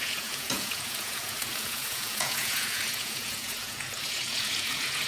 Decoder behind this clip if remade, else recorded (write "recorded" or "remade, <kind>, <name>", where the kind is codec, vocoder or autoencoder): remade, vocoder, Vocos